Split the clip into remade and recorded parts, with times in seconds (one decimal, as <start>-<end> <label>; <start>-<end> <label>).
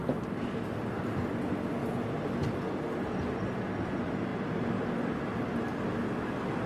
0.0-6.7 recorded